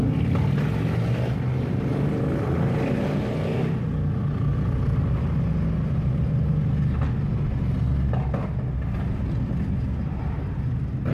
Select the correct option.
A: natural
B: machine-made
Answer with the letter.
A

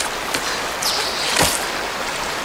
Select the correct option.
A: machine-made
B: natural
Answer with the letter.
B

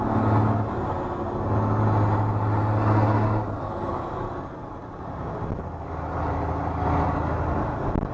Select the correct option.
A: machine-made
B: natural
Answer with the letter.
B